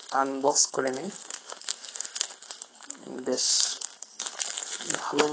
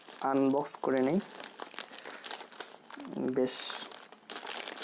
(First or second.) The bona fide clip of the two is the second